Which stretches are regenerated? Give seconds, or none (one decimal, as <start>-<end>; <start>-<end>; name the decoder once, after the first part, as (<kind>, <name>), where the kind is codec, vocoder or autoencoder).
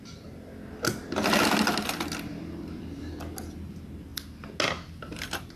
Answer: none